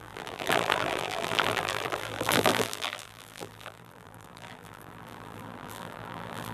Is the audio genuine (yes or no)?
no